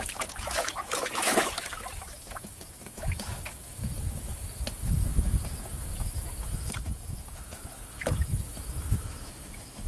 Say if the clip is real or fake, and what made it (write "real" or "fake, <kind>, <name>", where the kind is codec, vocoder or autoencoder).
fake, autoencoder, DAC-VAE